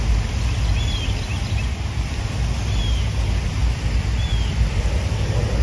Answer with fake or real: real